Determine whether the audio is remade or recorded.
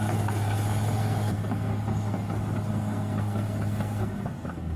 remade